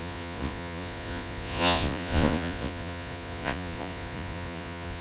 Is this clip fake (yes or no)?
yes